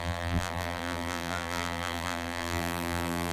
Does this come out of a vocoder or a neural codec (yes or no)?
yes